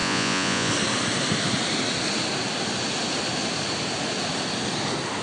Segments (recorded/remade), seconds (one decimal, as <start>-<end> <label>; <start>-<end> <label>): 0.0-0.7 remade; 0.7-5.2 recorded